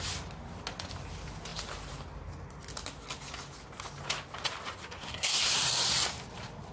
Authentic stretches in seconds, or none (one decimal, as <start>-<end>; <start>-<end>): 0.0-4.8; 5.4-6.7